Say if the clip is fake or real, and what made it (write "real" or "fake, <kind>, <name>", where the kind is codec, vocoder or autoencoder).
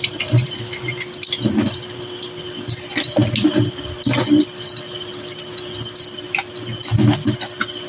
real